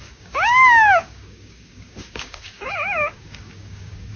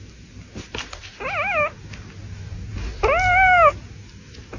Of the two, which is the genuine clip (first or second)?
second